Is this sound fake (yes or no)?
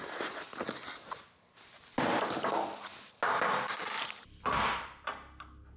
no